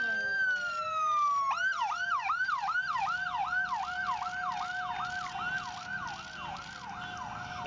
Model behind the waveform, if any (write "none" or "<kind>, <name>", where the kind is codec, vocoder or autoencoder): none